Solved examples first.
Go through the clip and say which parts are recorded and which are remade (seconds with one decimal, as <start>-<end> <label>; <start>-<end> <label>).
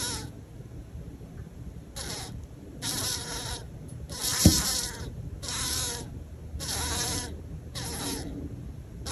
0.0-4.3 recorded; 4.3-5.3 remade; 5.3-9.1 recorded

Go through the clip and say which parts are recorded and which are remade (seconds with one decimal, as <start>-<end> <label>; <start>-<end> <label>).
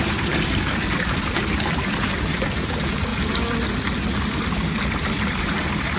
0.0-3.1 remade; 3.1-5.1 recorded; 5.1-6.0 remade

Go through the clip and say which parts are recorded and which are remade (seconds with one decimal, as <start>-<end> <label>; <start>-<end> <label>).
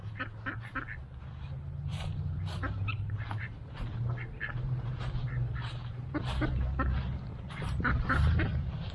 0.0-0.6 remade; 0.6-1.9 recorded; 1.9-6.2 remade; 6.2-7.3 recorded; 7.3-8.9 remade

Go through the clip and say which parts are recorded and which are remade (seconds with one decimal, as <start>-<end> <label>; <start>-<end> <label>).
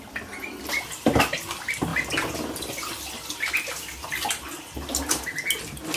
0.0-6.0 recorded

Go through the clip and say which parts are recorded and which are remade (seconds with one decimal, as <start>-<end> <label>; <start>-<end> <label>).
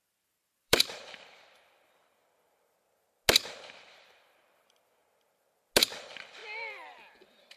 0.0-2.2 remade; 2.2-3.7 recorded; 3.7-5.0 remade; 5.0-5.8 recorded; 5.8-7.6 remade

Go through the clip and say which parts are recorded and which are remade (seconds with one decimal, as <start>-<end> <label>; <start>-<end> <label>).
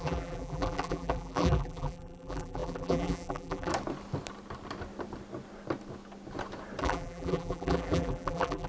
0.0-3.7 remade; 3.7-6.8 recorded; 6.8-8.7 remade